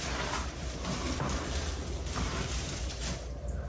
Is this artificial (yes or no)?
no